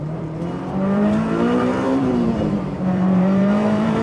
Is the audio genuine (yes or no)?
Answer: no